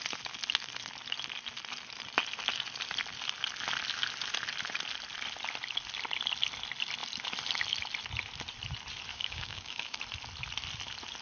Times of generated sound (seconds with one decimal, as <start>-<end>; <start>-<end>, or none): 9.1-10.0